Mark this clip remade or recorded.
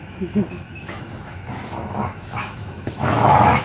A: remade